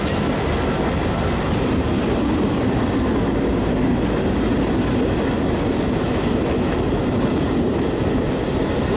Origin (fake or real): real